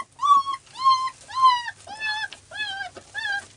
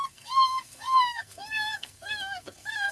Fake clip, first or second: second